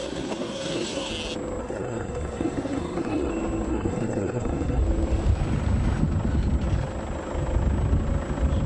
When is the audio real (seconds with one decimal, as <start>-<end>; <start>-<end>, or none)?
1.1-1.6; 3.3-3.7; 4.8-8.7